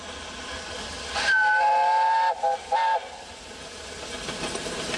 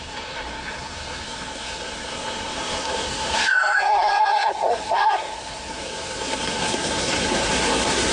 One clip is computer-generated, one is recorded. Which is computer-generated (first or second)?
second